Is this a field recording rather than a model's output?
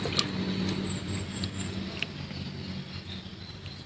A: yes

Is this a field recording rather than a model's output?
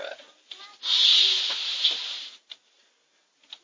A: yes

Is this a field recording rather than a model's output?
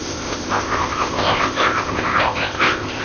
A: no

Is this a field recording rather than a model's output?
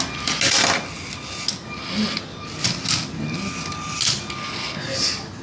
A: yes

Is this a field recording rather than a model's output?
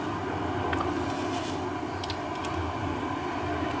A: yes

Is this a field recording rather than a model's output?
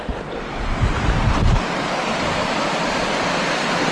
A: yes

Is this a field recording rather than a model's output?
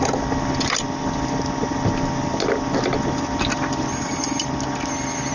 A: yes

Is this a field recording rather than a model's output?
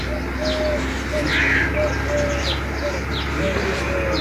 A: yes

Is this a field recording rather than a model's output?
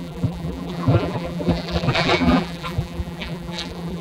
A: no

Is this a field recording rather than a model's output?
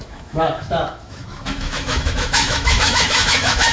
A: no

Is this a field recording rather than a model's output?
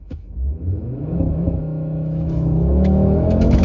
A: no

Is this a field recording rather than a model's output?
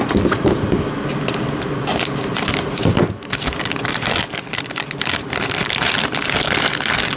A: yes